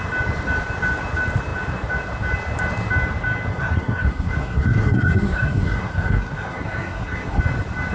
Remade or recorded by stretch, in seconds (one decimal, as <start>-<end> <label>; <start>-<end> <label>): 0.0-3.5 recorded; 3.5-7.4 remade; 7.4-7.9 recorded